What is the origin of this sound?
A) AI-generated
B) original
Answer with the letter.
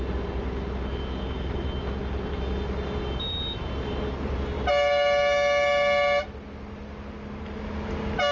B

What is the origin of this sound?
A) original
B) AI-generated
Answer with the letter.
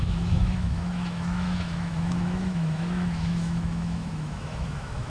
B